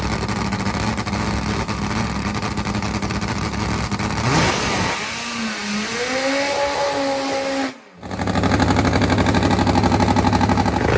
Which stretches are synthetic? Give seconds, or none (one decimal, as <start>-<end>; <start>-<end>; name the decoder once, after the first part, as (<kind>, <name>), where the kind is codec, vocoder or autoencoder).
none